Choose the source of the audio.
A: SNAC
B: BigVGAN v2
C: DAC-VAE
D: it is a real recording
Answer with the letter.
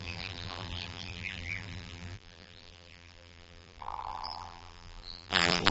B